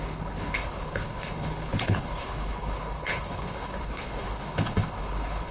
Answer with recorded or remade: remade